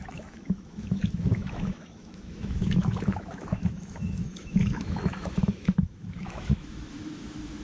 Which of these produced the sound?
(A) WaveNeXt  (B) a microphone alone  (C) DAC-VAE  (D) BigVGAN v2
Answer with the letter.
C